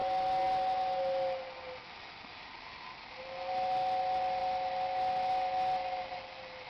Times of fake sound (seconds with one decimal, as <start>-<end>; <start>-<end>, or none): none